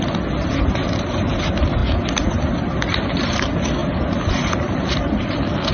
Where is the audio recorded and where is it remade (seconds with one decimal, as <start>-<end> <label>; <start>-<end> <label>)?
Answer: 0.0-5.7 recorded